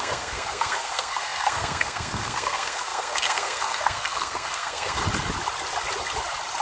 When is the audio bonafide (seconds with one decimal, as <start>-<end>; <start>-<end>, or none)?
5.0-6.6